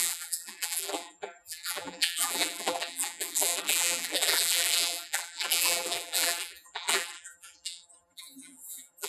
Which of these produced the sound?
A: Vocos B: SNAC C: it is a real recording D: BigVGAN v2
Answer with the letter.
D